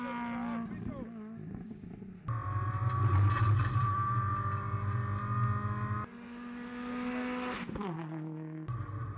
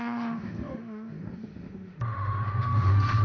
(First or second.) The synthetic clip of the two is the second